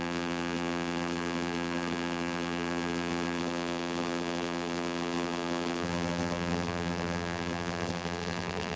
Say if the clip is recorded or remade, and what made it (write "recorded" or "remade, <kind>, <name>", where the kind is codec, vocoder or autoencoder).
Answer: remade, vocoder, BigVGAN v2